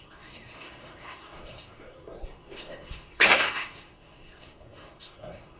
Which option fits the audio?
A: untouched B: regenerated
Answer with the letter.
B